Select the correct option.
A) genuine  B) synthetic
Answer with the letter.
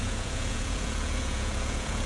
B